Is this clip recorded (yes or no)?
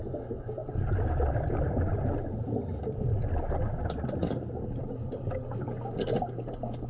yes